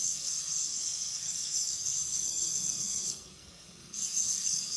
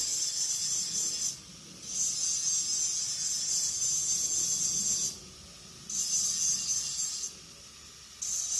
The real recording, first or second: second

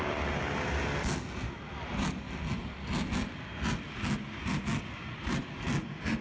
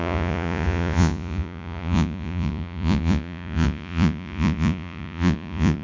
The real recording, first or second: first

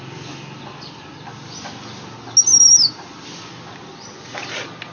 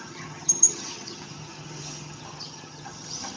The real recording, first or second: first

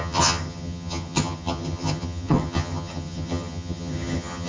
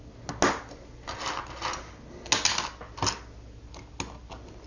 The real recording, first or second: second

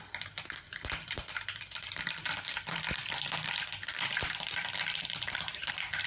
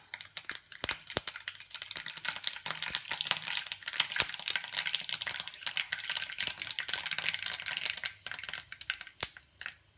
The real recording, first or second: second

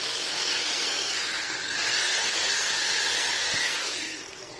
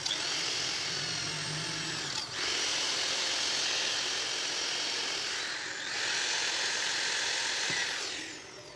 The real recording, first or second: second